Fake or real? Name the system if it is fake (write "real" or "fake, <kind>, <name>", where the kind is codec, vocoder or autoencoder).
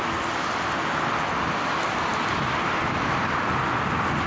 real